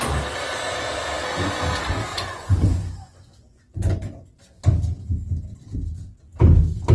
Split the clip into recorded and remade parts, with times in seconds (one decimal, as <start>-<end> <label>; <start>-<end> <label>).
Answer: 0.0-2.1 recorded; 2.1-4.4 remade; 4.4-6.9 recorded